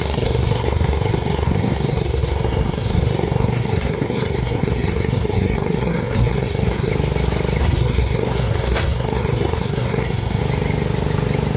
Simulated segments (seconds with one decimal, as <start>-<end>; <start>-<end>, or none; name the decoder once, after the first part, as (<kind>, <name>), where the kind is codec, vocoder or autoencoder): 0.0-6.9 (codec, SNAC); 7.6-10.4